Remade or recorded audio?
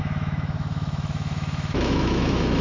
remade